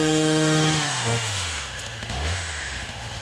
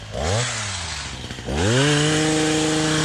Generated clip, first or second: first